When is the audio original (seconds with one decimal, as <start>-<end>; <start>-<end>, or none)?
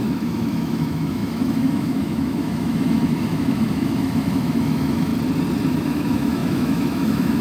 5.1-5.7